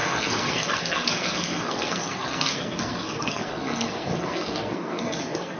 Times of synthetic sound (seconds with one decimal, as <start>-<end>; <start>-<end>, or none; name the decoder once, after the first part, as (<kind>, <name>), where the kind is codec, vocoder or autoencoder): 0.0-5.6 (codec, SNAC)